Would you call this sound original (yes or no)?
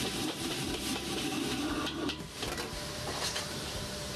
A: no